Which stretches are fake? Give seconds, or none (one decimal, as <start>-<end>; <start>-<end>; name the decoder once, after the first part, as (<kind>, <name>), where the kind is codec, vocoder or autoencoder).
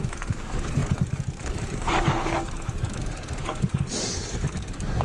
0.0-5.0 (codec, DAC)